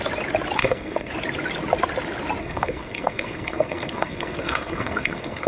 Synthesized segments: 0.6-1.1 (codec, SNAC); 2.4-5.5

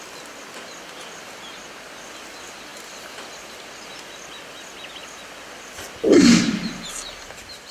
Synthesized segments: none

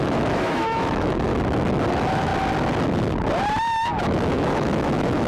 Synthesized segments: 0.0-1.3 (autoencoder, DAC-VAE); 1.9-2.3; 4.0-5.3

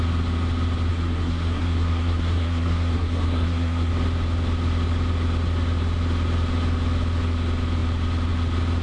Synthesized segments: 0.9-3.9 (codec, SNAC)

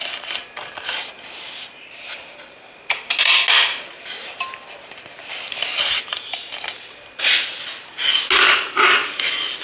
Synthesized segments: 0.6-1.1 (vocoder, BigVGAN v2)

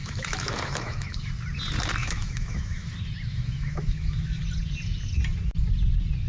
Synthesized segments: 0.0-1.3 (autoencoder, DAC-VAE); 2.0-2.9; 3.3-4.4